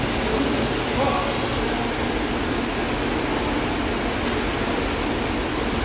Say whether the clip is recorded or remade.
recorded